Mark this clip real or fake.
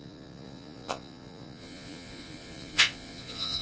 fake